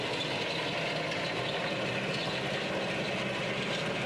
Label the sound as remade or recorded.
recorded